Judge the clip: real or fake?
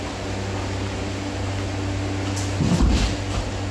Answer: real